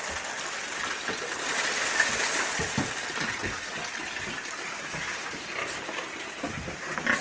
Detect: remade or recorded recorded